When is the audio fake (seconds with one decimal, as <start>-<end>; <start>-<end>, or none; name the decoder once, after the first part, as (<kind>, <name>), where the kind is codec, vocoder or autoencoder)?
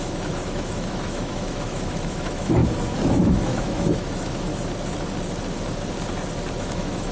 0.0-2.6 (autoencoder, DAC-VAE); 3.3-4.5; 6.6-7.1